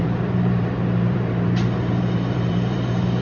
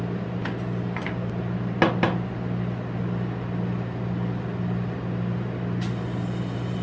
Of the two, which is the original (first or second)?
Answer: second